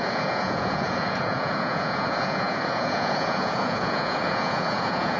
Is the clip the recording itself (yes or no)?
no